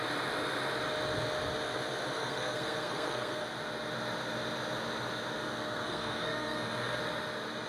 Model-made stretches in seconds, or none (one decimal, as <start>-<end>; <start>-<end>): 2.2-3.4; 5.4-7.0